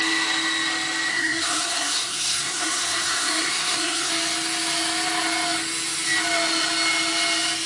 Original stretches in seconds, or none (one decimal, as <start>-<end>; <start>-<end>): 0.0-1.1; 4.1-7.7